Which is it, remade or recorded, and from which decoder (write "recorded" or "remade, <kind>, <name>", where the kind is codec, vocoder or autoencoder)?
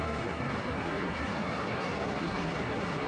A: remade, codec, SNAC